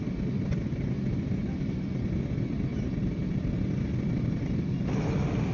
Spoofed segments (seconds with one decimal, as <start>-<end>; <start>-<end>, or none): none